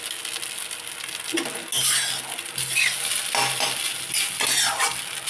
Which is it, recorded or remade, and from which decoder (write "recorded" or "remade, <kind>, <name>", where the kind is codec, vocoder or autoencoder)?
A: recorded